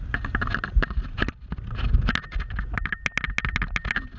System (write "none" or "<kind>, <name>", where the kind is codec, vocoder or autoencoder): none